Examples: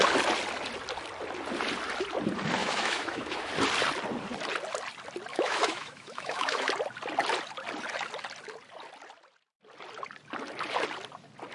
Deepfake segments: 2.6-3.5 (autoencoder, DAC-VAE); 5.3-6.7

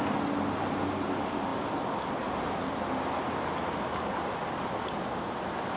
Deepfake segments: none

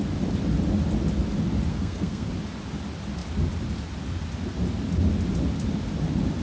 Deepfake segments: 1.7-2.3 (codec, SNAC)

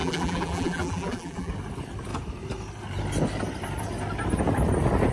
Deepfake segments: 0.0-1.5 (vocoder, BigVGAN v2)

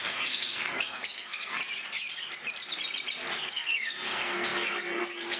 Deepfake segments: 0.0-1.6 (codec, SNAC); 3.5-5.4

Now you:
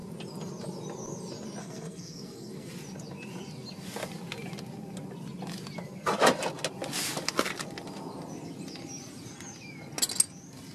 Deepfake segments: 1.6-2.7 (codec, SNAC)

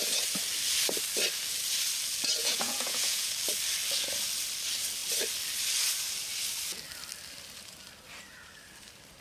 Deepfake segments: 2.4-3.3 (vocoder, Vocos)